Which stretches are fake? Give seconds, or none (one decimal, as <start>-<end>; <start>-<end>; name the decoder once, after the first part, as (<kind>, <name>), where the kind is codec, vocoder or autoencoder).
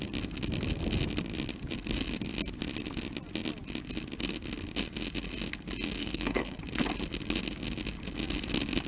6.0-6.6 (codec, SNAC)